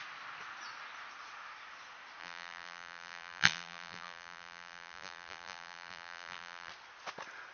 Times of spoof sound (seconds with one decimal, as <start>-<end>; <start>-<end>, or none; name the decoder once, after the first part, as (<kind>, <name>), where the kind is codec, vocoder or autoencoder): 2.2-6.7 (vocoder, BigVGAN v2)